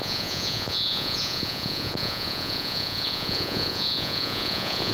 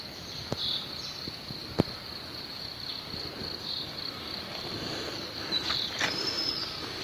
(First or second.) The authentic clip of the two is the second